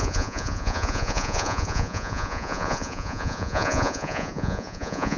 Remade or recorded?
remade